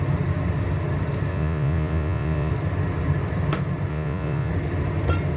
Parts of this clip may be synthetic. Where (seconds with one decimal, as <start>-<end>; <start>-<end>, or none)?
1.3-2.5; 3.9-4.5